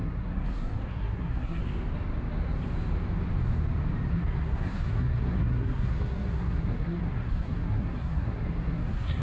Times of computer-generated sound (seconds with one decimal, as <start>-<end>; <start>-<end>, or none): 0.0-1.6; 4.1-9.2